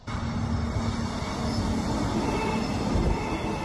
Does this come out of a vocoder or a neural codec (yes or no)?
no